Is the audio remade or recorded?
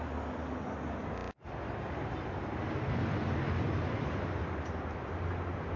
recorded